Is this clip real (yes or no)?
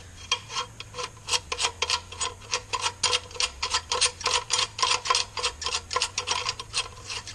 yes